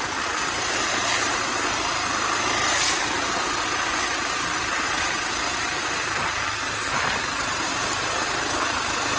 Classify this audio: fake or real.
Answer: real